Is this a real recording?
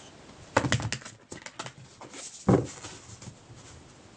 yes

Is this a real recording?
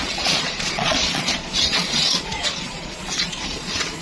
no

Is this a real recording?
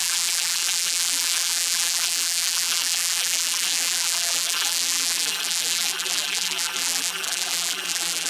no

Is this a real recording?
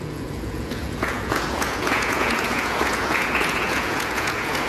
no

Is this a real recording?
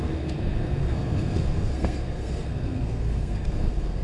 no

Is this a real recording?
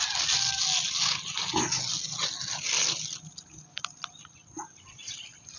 yes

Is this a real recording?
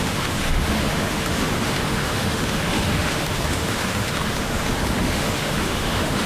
no